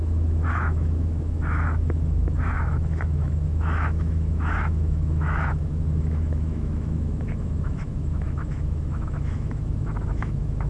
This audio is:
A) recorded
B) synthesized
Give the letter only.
B